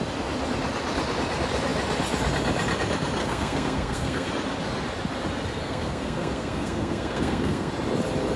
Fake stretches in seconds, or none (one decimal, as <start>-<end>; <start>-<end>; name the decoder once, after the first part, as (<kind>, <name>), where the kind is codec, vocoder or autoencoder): 3.2-4.3 (codec, SNAC); 5.6-7.7